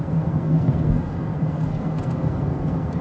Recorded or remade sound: remade